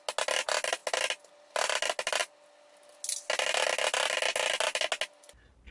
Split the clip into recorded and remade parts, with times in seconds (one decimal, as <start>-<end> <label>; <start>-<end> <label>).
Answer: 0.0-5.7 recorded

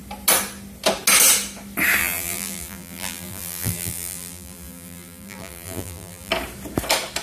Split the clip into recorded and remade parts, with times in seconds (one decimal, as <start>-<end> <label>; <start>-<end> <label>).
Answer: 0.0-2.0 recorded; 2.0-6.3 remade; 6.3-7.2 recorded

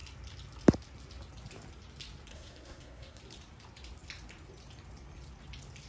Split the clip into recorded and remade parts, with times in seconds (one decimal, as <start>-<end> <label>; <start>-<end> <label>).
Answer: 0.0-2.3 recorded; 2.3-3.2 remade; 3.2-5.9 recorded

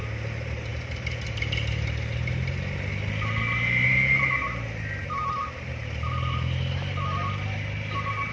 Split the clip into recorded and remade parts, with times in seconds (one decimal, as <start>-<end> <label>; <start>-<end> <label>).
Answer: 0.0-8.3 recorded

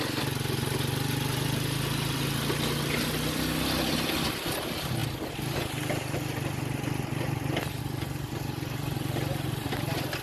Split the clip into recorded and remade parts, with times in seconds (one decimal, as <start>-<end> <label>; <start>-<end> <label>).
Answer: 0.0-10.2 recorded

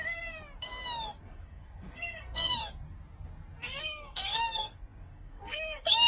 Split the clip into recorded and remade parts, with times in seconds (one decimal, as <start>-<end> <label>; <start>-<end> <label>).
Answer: 0.0-1.2 recorded; 1.2-2.6 remade; 2.6-3.8 recorded; 3.8-6.1 remade

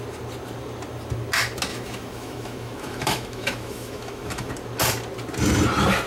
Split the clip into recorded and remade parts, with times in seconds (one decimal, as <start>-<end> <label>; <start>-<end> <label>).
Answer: 0.0-1.7 recorded; 1.7-4.5 remade; 4.5-6.1 recorded